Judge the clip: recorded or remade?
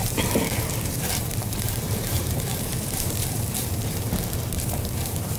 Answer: remade